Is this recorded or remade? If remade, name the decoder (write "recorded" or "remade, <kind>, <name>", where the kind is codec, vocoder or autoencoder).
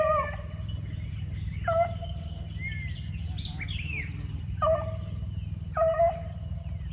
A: recorded